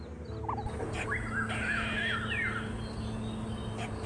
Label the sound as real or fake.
real